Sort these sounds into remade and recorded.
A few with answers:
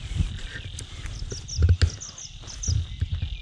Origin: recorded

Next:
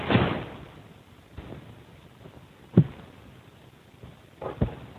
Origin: recorded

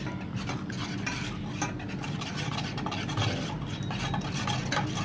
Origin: recorded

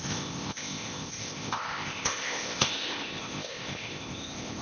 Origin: remade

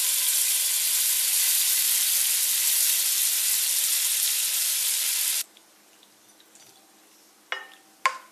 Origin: recorded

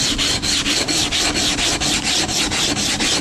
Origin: recorded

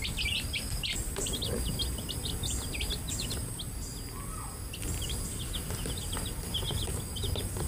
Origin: recorded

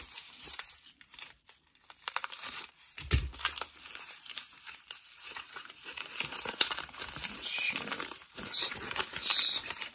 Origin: remade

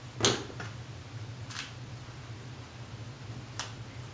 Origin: recorded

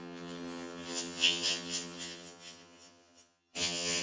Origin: remade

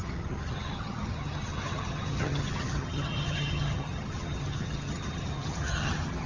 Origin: remade